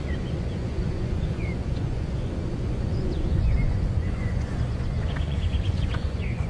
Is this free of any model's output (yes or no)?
no